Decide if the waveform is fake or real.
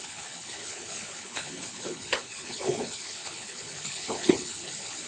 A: fake